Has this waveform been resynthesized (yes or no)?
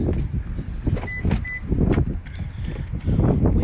no